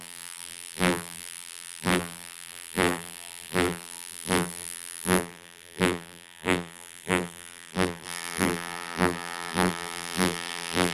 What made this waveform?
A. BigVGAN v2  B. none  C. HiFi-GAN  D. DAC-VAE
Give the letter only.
A